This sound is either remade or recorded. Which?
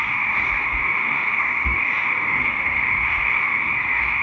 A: remade